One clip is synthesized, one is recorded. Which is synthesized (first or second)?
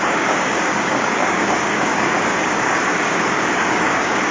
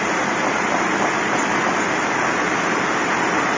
first